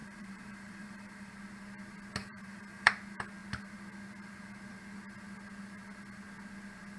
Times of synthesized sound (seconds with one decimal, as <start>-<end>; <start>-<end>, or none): 0.0-1.3; 2.2-2.9